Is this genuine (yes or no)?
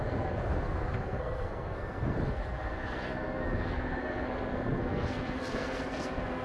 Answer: no